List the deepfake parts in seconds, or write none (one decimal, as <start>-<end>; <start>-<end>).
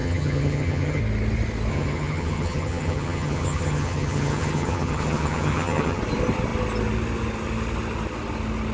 0.0-1.0; 1.7-6.0